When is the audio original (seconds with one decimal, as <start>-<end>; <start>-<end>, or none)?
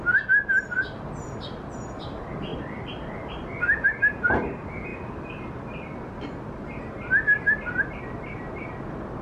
0.0-9.2